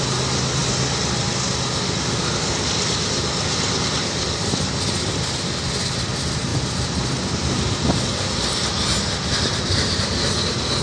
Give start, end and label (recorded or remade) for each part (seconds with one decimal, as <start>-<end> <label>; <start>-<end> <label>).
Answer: 0.0-10.8 recorded